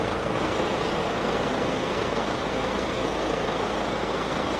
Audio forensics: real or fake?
fake